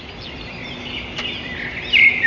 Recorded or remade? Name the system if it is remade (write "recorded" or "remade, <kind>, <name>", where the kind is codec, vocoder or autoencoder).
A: recorded